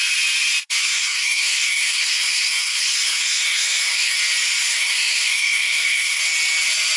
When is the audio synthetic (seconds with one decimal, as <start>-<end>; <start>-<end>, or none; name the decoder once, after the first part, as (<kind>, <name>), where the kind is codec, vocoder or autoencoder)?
0.8-4.2 (codec, SNAC); 4.7-6.2